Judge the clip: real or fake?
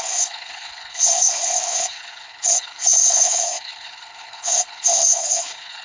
fake